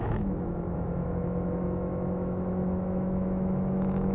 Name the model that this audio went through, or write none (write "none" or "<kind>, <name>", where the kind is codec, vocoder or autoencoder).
autoencoder, DAC-VAE